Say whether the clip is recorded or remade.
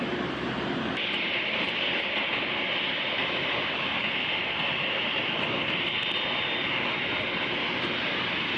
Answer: recorded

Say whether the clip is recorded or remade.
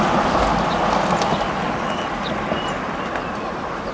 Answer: recorded